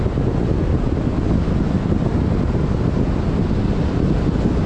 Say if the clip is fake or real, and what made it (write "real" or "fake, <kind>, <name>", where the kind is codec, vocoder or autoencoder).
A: real